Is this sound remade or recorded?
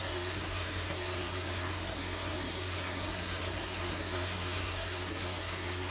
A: remade